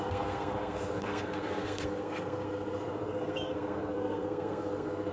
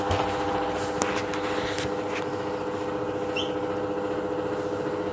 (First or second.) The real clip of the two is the second